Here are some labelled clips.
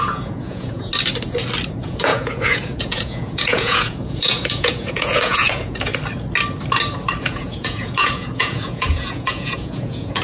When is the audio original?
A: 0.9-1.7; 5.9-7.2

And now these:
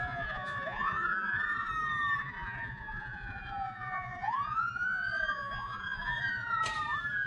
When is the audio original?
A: 1.7-2.2; 6.6-7.3

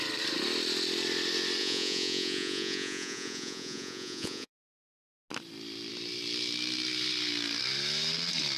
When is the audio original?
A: 0.0-1.6; 4.5-8.6

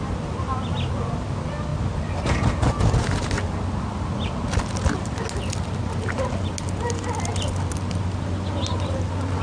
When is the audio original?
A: 0.0-9.4